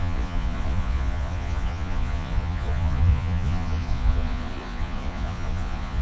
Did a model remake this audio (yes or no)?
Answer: yes